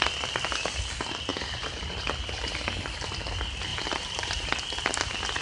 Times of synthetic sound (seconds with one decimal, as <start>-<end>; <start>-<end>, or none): 3.7-4.5